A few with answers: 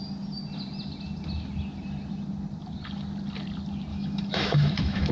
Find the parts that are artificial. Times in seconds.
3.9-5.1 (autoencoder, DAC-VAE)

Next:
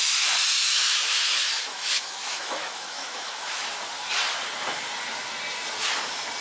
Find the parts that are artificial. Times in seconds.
0.5-3.8 (autoencoder, DAC-VAE)

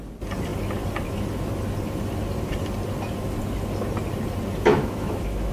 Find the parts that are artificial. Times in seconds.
4.7-5.5 (autoencoder, DAC-VAE)

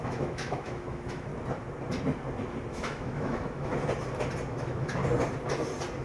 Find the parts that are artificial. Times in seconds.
0.0-1.3 (autoencoder, DAC-VAE); 2.7-3.7; 4.5-5.0

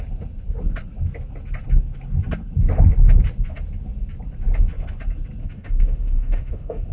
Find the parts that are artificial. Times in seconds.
5.4-6.9 (autoencoder, DAC-VAE)

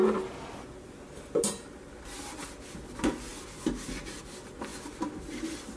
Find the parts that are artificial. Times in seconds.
none

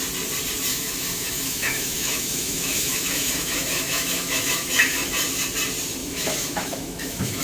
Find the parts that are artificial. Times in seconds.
0.7-5.1 (autoencoder, DAC-VAE); 6.0-7.4

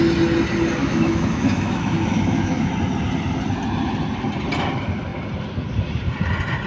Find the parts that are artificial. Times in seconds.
0.8-2.7 (autoencoder, DAC-VAE)